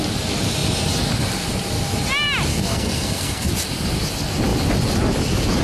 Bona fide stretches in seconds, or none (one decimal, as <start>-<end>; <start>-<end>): 0.0-2.5; 3.5-5.6